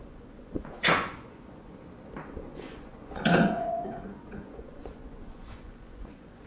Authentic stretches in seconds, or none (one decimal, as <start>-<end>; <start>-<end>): 1.8-2.3